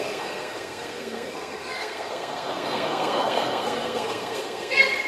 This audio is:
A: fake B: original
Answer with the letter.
A